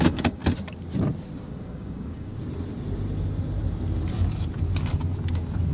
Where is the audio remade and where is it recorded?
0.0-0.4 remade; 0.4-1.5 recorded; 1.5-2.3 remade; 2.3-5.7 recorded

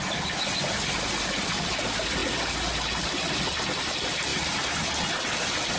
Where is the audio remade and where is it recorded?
0.0-5.8 recorded

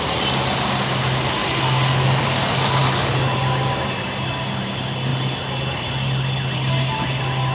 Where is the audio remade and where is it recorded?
0.0-7.5 recorded

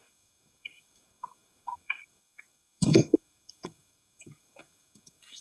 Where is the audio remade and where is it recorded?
0.0-5.4 remade

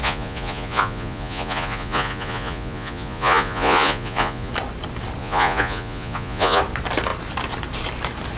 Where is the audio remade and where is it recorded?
0.0-4.5 remade; 4.5-5.2 recorded; 5.2-6.6 remade; 6.6-8.4 recorded

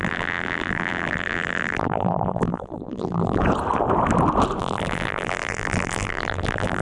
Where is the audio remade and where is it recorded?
0.0-3.4 remade; 3.4-4.6 recorded; 4.6-6.8 remade